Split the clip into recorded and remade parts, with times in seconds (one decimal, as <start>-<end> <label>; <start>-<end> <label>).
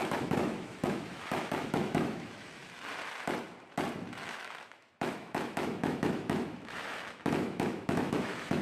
0.0-2.6 remade; 2.6-4.1 recorded; 4.1-8.6 remade